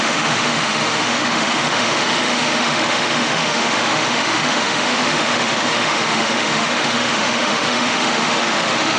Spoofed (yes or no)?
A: yes